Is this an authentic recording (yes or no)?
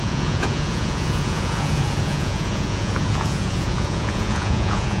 no